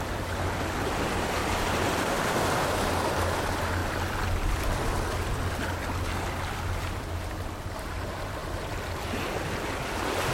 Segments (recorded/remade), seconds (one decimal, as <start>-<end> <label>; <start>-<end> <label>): 0.0-1.4 recorded; 1.4-2.4 remade; 2.4-10.3 recorded